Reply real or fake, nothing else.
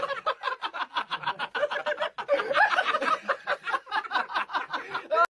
real